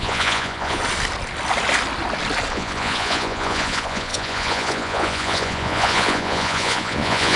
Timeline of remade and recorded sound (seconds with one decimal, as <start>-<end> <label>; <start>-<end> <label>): 0.0-0.8 remade; 0.8-2.5 recorded; 2.5-7.4 remade